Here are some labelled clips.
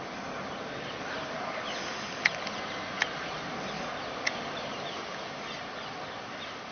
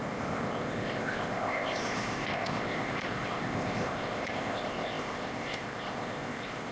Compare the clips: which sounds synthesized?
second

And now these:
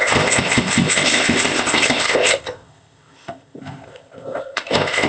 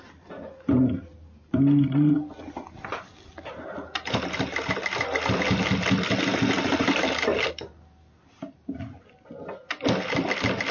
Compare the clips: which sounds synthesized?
first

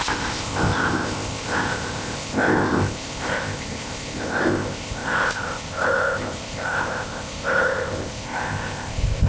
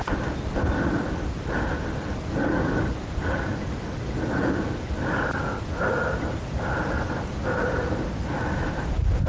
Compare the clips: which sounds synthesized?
first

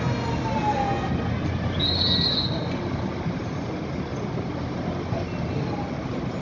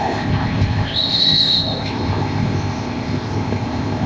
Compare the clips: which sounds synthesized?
second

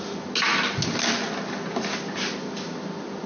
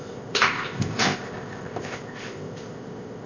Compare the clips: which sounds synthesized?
second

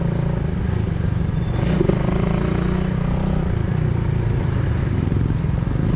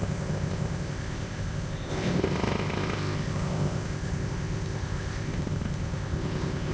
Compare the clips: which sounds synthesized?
second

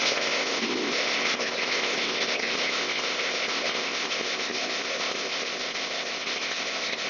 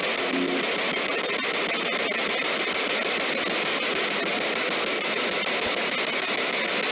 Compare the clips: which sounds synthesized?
first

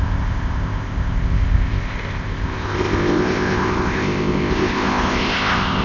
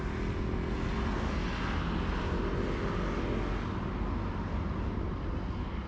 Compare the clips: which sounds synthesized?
first